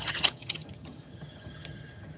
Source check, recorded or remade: remade